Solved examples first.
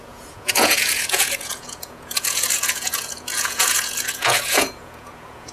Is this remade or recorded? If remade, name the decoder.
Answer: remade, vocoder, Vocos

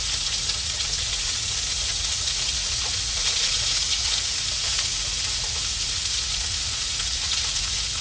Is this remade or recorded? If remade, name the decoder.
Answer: remade, vocoder, Vocos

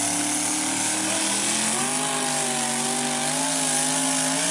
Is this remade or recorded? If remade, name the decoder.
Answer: recorded